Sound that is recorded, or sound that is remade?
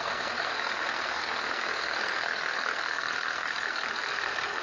remade